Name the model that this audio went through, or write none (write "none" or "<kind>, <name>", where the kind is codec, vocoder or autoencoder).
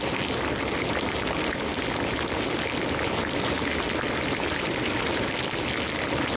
none